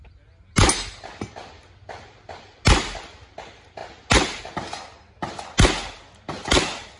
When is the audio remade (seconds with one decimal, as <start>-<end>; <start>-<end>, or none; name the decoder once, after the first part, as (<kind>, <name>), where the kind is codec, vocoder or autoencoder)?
none